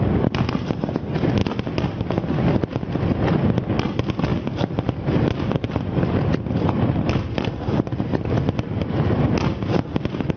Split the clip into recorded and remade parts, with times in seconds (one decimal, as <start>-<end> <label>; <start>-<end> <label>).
0.0-10.4 recorded